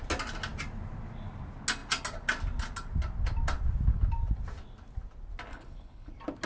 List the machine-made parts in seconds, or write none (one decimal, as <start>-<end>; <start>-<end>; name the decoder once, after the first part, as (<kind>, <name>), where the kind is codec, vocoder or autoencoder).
5.5-6.1 (codec, HILCodec)